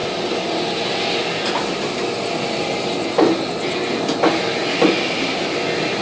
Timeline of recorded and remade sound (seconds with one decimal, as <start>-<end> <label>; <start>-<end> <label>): 0.0-6.0 recorded

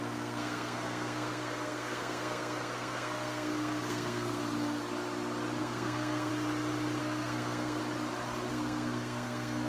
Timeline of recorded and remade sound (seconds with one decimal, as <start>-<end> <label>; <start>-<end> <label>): 0.0-4.4 remade; 4.4-5.6 recorded; 5.6-6.3 remade; 6.3-7.0 recorded; 7.0-7.8 remade; 7.8-8.5 recorded; 8.5-9.7 remade